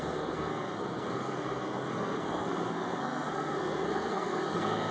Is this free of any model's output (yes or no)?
no